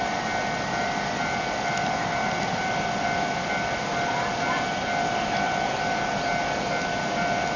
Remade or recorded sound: recorded